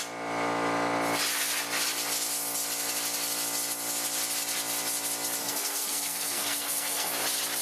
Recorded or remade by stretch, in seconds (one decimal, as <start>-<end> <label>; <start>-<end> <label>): 0.0-5.4 recorded; 5.4-7.1 remade; 7.1-7.6 recorded